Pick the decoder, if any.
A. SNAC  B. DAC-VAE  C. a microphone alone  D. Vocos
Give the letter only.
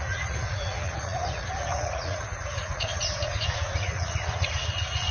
D